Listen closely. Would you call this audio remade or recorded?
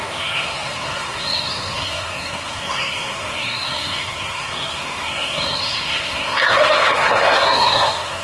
remade